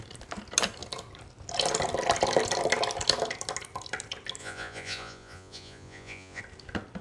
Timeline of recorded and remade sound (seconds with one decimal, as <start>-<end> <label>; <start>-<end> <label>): 0.0-4.4 recorded; 4.4-6.4 remade; 6.4-7.0 recorded